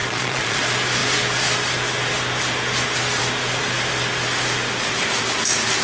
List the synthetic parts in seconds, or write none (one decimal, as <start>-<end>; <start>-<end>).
0.0-0.6